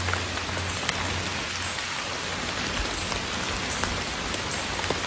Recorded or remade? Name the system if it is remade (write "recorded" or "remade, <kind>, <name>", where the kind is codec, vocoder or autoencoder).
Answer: recorded